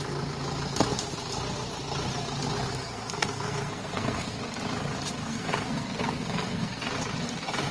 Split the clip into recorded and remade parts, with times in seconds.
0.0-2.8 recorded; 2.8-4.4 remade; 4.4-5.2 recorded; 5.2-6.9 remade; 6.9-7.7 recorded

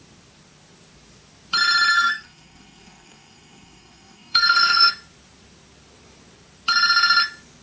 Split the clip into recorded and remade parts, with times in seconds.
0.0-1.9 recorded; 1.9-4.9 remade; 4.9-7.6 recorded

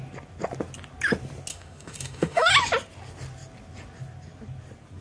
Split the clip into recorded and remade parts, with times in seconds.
0.0-1.5 recorded; 1.5-2.5 remade; 2.5-5.0 recorded